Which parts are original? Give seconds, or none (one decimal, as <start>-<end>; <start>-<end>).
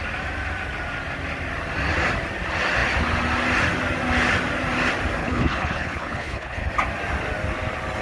0.0-5.2; 6.7-8.0